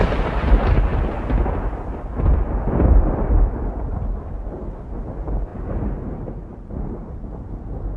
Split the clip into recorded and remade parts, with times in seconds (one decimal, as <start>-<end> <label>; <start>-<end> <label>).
0.0-0.9 remade; 0.9-2.9 recorded; 2.9-5.5 remade; 5.5-8.0 recorded

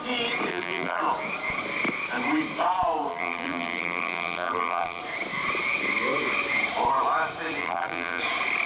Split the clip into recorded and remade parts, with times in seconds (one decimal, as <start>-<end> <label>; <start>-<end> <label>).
0.0-0.5 recorded; 0.5-1.0 remade; 1.0-3.1 recorded; 3.1-5.0 remade; 5.0-7.6 recorded; 7.6-8.2 remade; 8.2-8.7 recorded

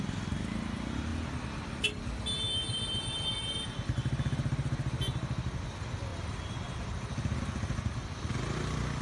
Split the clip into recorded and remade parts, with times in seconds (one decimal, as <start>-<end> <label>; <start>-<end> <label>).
0.0-9.0 recorded

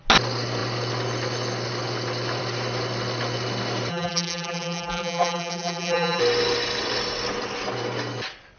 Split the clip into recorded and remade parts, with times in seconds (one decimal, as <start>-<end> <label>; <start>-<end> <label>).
0.0-3.9 recorded; 3.9-6.2 remade; 6.2-8.6 recorded